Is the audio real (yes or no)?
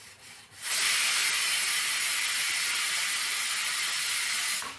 yes